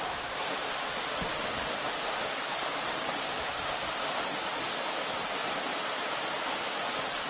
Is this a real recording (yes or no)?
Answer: yes